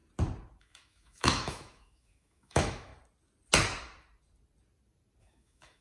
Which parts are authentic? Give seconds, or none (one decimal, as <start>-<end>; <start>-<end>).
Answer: 0.0-0.6; 2.9-5.2